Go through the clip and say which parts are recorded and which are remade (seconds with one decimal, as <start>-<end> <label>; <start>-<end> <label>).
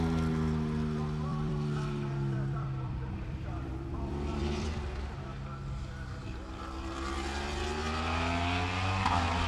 0.0-1.3 recorded; 1.3-4.7 remade; 4.7-9.5 recorded